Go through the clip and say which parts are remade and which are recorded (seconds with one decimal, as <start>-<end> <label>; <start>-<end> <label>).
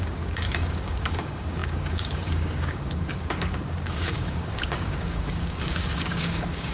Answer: 0.0-6.7 remade